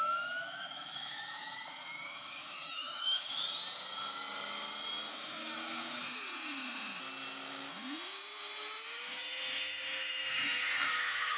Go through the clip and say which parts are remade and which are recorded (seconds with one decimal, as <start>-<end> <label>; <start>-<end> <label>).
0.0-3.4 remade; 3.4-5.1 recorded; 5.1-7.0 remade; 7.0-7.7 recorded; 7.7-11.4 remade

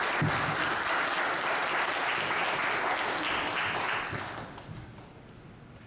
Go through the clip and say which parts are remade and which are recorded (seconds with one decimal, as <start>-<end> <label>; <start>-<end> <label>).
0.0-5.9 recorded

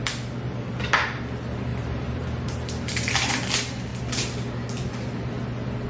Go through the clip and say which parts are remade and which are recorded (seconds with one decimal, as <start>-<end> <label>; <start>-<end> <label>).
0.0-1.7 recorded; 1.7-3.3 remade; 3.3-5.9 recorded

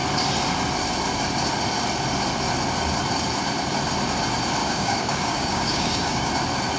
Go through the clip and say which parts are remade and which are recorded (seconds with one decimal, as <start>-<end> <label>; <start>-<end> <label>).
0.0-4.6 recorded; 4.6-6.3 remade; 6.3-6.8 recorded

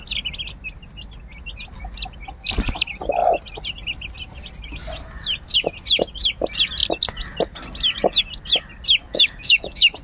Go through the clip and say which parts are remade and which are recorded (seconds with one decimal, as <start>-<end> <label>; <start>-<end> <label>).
0.0-9.0 recorded; 9.0-10.0 remade

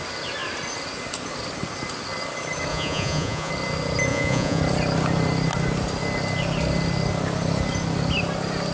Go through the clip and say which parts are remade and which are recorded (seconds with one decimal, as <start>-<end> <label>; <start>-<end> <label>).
0.0-2.7 recorded; 2.7-3.5 remade; 3.5-4.1 recorded; 4.1-4.6 remade; 4.6-8.7 recorded

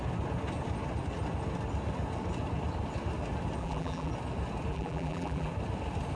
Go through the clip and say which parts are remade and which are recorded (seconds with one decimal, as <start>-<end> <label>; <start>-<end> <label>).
0.0-3.6 recorded; 3.6-4.1 remade; 4.1-4.7 recorded; 4.7-5.5 remade; 5.5-6.2 recorded

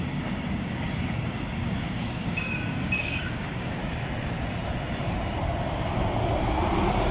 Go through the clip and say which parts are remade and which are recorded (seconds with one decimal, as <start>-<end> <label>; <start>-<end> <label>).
0.0-3.8 remade; 3.8-7.1 recorded